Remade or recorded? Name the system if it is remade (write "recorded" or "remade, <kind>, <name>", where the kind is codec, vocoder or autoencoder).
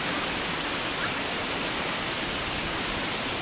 recorded